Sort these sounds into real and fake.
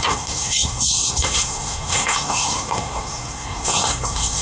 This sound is fake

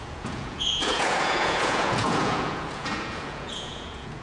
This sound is fake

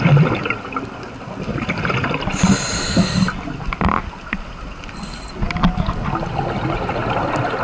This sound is real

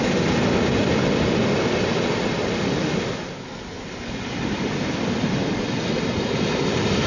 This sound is real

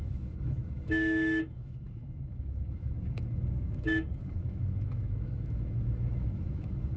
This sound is fake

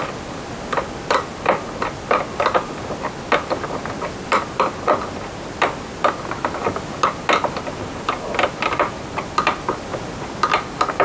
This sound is real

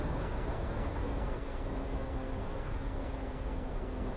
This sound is fake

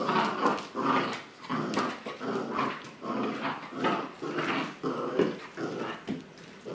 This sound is real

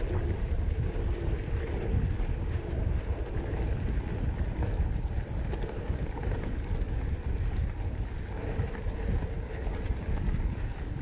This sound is real